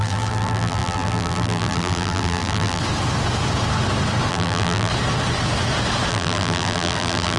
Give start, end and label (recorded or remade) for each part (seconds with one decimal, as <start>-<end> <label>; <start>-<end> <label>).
0.0-2.8 remade; 2.8-4.3 recorded; 4.3-4.9 remade; 4.9-6.1 recorded; 6.1-7.4 remade